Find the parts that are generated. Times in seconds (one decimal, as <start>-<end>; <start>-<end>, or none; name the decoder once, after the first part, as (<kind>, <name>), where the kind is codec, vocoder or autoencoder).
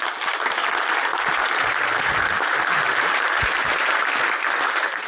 1.1-4.2 (vocoder, BigVGAN v2)